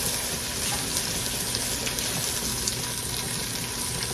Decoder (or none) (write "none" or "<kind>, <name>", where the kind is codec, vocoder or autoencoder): none